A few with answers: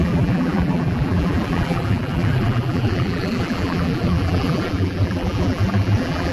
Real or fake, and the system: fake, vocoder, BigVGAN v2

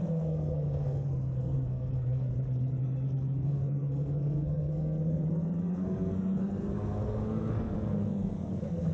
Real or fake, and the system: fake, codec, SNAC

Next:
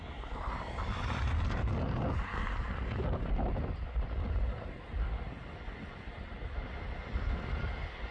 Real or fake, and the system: real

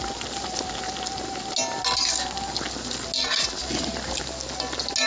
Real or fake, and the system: real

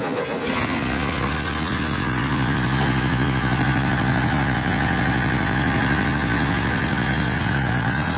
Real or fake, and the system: fake, vocoder, Vocos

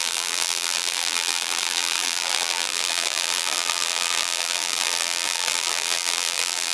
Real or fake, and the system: fake, vocoder, BigVGAN v2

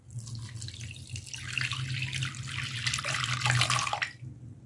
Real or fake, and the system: real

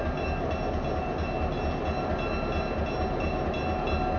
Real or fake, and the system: real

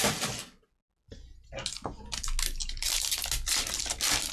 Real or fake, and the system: real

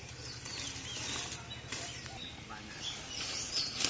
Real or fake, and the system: real